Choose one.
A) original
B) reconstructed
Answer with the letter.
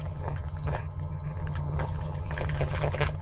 B